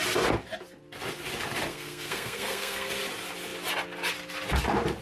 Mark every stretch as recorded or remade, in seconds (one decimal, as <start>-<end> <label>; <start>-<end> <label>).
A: 0.0-1.7 recorded; 1.7-2.9 remade; 2.9-5.0 recorded